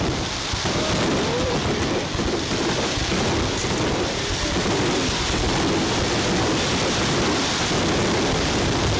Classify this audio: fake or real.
fake